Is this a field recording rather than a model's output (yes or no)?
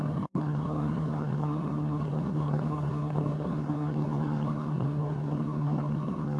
no